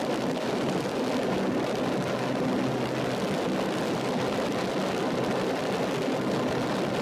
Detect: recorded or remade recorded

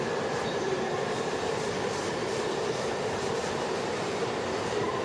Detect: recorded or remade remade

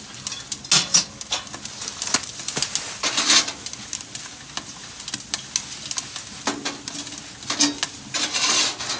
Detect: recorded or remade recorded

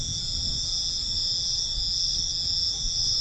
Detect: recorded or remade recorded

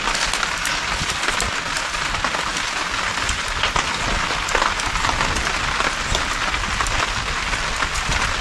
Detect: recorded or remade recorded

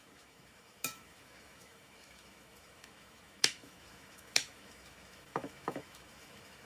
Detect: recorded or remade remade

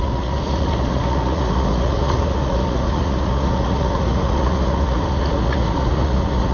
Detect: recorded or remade remade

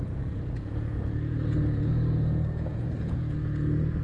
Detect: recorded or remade remade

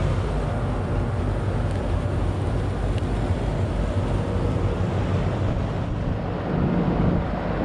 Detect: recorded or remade recorded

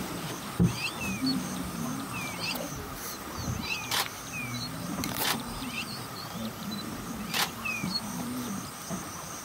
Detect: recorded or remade remade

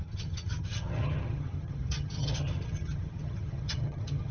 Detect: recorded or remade remade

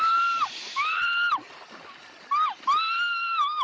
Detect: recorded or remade recorded